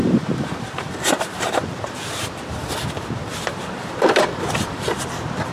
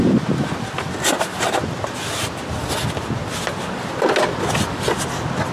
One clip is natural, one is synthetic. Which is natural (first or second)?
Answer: second